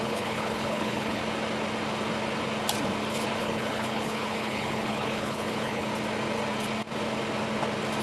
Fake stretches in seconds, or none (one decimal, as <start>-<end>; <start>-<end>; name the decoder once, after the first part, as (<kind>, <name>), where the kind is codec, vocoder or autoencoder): 0.0-1.2 (codec, HILCodec); 3.4-5.9